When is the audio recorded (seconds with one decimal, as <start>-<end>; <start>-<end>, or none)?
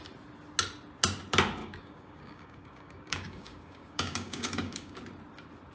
0.0-1.6; 5.0-5.7